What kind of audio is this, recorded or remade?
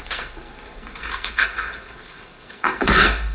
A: remade